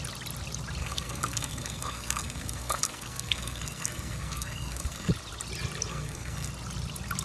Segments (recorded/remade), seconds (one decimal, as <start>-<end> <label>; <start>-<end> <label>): 0.0-0.8 recorded; 0.8-5.1 remade; 5.1-5.9 recorded; 5.9-6.5 remade; 6.5-7.2 recorded